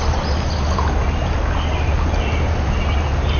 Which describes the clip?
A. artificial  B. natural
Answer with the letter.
B